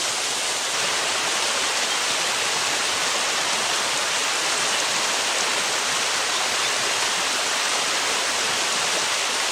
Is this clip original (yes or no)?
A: yes